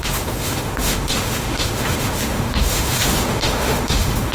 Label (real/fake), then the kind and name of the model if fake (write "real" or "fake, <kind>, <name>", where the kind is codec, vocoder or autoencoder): fake, autoencoder, DAC-VAE